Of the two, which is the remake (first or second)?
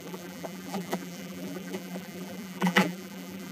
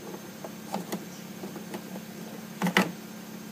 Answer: first